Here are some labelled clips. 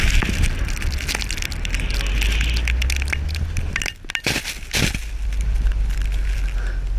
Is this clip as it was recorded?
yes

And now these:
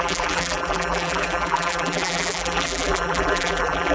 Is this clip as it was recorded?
no